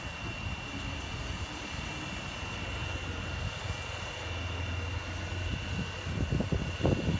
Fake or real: real